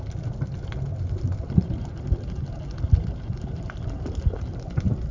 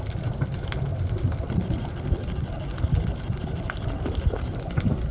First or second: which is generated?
second